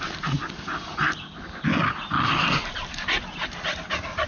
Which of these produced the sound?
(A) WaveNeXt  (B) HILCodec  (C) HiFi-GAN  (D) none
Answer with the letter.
D